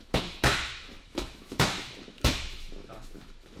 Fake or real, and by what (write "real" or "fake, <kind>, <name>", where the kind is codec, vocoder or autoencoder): fake, autoencoder, DAC-VAE